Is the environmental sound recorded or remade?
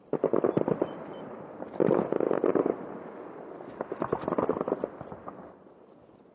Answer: remade